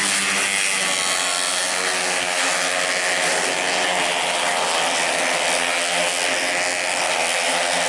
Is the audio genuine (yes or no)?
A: yes